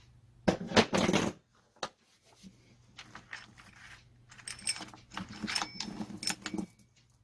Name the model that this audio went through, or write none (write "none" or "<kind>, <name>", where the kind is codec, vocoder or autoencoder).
none